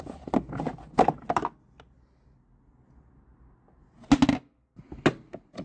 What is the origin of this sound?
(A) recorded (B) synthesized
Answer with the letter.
A